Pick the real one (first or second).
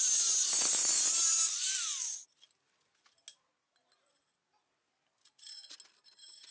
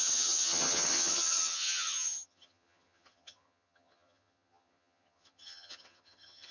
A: first